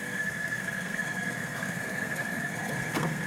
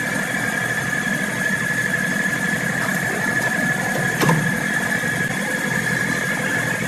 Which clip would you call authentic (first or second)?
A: second